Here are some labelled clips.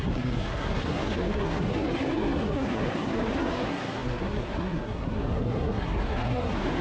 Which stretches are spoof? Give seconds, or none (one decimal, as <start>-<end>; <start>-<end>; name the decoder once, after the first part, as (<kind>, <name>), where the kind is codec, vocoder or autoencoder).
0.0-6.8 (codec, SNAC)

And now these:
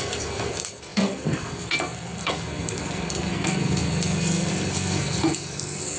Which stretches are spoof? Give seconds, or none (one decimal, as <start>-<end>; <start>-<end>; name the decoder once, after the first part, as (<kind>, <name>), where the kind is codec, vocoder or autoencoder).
0.0-6.0 (codec, SNAC)

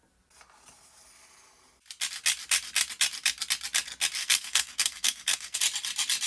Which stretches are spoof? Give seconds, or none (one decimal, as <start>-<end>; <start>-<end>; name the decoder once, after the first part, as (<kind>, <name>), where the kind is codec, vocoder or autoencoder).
4.2-5.6 (codec, SNAC)

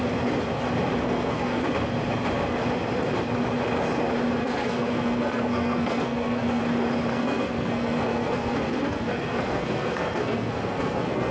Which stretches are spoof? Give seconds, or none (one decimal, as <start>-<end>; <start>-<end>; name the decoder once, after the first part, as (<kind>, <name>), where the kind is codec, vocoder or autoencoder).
1.0-1.6 (codec, SNAC); 4.4-6.6; 7.1-11.3

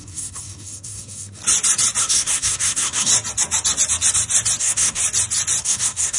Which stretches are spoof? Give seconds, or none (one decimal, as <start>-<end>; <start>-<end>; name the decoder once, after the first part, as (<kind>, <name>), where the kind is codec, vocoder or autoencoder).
0.0-1.4 (codec, SNAC); 2.0-3.1; 4.6-5.0; 5.6-6.2

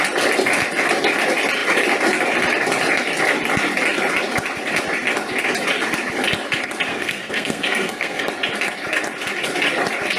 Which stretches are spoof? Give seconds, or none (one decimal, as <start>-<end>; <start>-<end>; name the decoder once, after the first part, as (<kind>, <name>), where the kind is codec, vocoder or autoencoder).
6.9-8.2 (codec, SNAC)

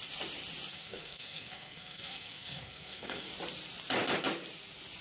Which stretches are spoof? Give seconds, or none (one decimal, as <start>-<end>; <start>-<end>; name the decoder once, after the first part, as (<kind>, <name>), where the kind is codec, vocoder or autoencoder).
0.7-3.3 (codec, SNAC)